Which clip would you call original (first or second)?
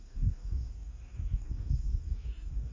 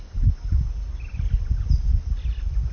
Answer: second